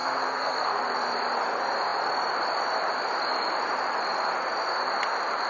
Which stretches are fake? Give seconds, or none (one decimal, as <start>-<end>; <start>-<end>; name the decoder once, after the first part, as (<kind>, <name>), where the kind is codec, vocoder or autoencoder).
0.0-0.8 (codec, SNAC)